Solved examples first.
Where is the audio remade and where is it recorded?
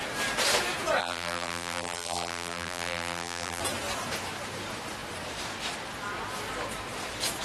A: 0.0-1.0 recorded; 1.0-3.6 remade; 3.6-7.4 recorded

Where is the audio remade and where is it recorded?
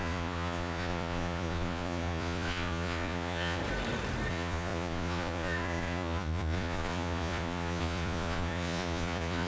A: 0.0-3.6 remade; 3.6-4.3 recorded; 4.3-9.5 remade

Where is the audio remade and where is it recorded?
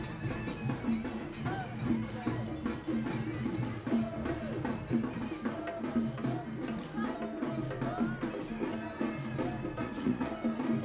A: 0.0-9.8 recorded; 9.8-10.3 remade; 10.3-10.8 recorded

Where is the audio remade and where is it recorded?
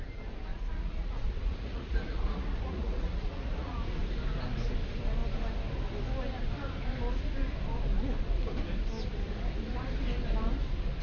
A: 0.0-0.5 recorded; 0.5-3.8 remade; 3.8-11.0 recorded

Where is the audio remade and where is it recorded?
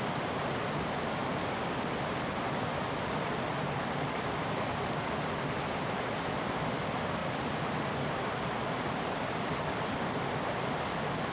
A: 0.0-11.3 recorded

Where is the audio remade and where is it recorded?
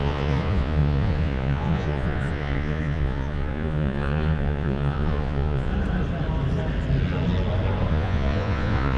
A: 0.0-5.7 remade; 5.7-7.9 recorded; 7.9-9.0 remade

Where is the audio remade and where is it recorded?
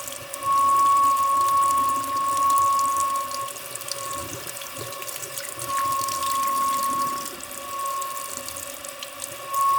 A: 0.0-4.2 recorded; 4.2-5.7 remade; 5.7-9.8 recorded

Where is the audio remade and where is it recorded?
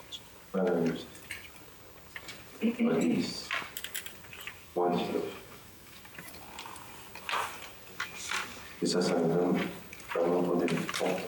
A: 0.0-4.7 recorded; 4.7-6.0 remade; 6.0-11.3 recorded